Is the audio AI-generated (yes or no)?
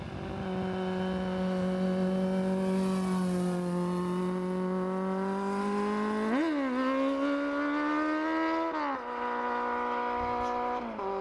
no